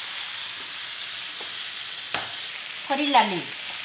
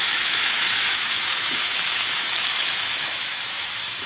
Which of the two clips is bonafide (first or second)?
first